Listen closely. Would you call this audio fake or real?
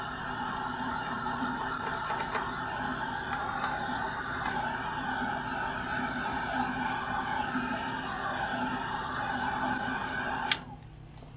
real